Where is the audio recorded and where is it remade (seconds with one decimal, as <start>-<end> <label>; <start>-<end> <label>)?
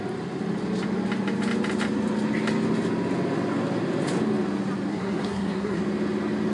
0.0-4.9 recorded; 4.9-5.8 remade; 5.8-6.5 recorded